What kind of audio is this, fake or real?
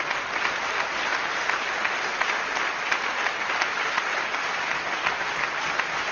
real